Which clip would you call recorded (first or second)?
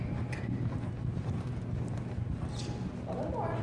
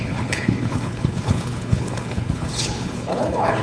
first